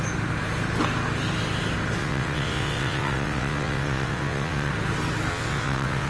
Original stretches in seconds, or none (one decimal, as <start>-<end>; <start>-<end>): 0.0-2.0; 4.7-5.3